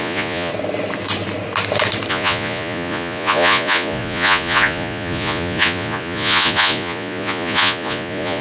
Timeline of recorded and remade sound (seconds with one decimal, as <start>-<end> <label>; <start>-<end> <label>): 0.0-0.5 remade; 0.5-2.1 recorded; 2.1-8.4 remade